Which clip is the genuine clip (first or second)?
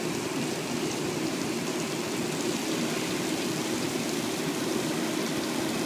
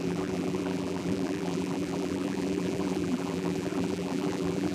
first